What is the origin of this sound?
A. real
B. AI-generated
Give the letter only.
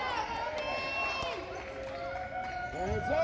A